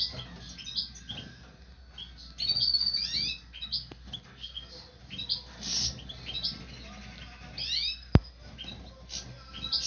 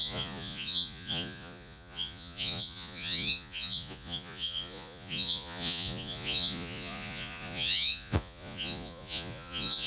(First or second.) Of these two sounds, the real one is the first